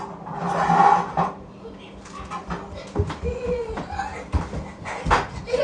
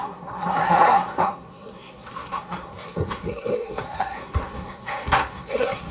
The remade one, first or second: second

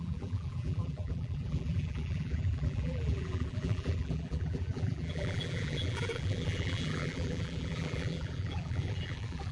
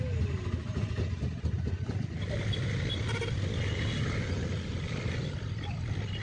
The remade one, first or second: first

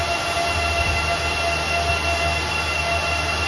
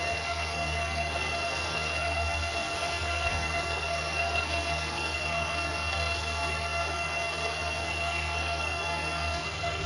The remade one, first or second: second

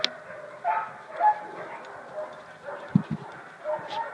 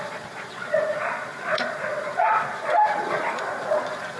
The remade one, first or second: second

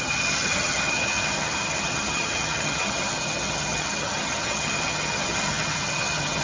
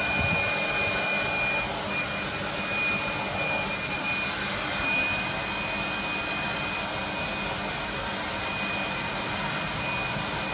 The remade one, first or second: first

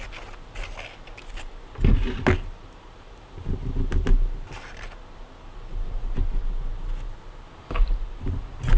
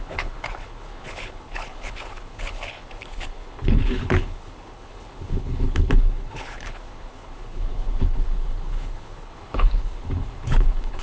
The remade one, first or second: second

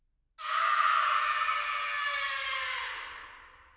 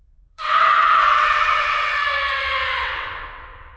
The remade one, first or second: second